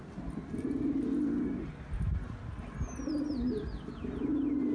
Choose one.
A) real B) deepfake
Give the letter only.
A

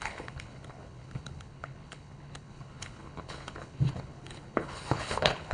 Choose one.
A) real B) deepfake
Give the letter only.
B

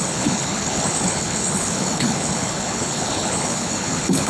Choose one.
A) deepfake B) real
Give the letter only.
A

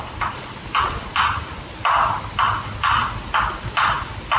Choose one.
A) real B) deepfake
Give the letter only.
A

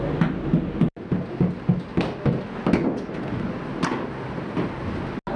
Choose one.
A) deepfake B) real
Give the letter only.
B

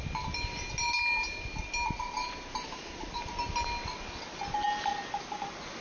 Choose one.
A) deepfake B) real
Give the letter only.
B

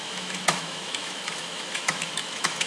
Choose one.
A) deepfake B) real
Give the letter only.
A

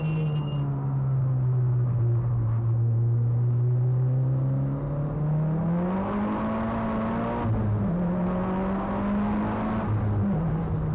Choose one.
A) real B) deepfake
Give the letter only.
A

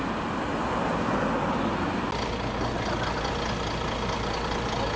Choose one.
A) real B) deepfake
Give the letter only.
A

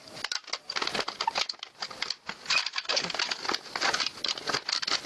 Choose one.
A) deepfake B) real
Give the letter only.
B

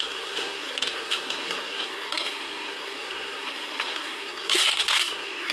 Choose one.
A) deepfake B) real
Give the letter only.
A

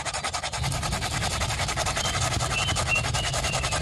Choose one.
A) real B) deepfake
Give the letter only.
A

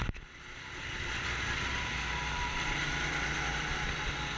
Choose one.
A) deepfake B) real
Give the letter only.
B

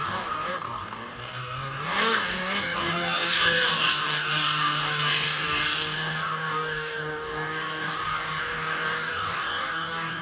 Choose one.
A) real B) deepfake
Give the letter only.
B